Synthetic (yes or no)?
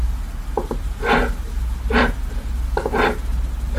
no